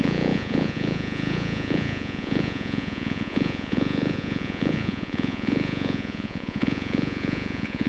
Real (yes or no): no